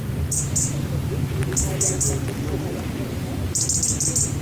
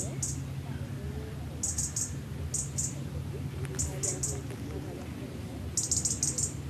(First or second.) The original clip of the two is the second